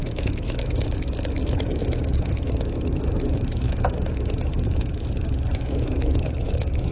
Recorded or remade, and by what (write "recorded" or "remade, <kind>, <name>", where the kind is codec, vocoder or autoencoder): remade, autoencoder, DAC-VAE